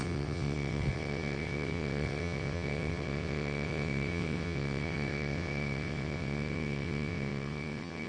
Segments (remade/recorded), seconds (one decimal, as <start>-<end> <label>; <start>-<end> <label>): 0.0-8.1 remade